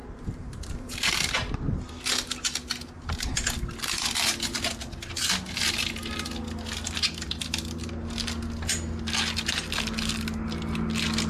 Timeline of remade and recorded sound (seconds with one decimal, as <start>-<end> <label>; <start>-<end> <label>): 0.0-1.1 remade; 1.1-11.3 recorded